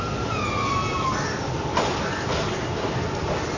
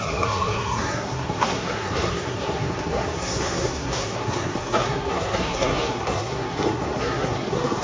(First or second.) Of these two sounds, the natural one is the first